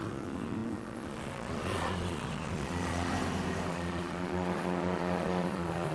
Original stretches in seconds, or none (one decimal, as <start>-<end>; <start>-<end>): 3.1-3.7